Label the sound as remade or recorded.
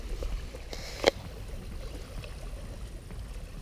recorded